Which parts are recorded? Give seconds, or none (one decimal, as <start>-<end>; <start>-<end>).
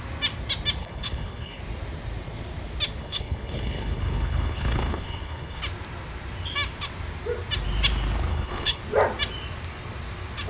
0.0-0.8; 1.6-3.0; 5.6-8.3; 8.8-10.5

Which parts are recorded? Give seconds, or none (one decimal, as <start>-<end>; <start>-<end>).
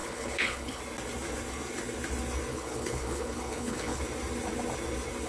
0.8-2.5; 4.0-5.3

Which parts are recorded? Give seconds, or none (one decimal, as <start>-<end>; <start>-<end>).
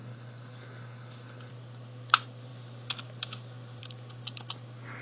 1.5-5.0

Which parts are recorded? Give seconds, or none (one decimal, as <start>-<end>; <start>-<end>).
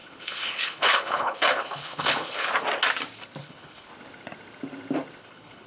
2.5-3.4; 3.9-5.2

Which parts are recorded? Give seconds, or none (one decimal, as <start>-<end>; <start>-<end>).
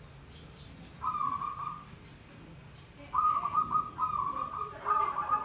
0.0-5.4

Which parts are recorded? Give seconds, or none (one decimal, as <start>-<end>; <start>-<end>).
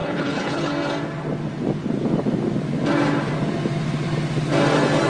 0.7-5.1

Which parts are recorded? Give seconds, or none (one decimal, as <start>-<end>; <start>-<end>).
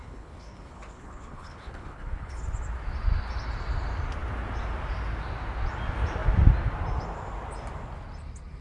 2.4-8.6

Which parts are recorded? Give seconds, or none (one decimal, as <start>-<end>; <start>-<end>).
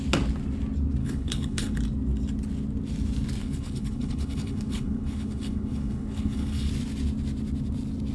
0.0-1.0; 1.8-3.4; 6.7-8.1